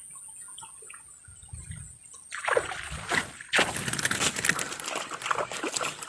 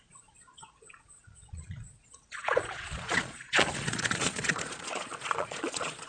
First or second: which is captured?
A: first